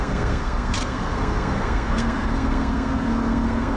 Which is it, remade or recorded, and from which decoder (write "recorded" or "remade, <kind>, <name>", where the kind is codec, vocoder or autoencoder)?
remade, codec, SNAC